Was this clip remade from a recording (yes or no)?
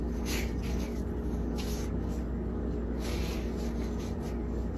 yes